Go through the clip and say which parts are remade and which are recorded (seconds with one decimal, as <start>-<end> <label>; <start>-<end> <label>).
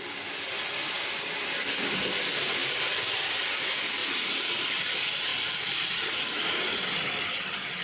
0.0-7.8 recorded